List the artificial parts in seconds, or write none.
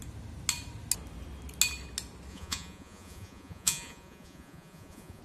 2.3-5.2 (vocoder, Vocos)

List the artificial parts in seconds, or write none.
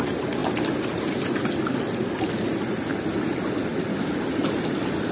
none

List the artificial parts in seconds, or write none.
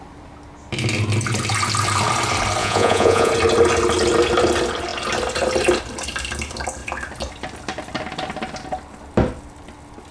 2.6-3.3 (vocoder, Vocos)